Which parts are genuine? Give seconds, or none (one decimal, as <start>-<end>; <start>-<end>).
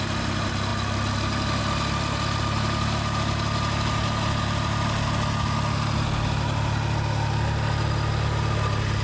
0.0-9.0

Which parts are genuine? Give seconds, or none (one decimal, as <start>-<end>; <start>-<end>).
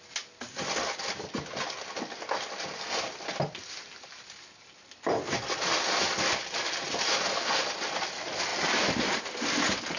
0.0-10.0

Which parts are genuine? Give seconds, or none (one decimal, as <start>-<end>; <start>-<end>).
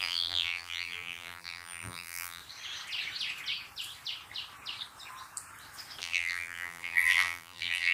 2.4-6.0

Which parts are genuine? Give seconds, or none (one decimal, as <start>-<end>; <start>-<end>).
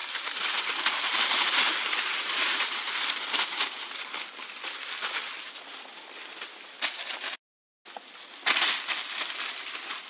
3.2-10.1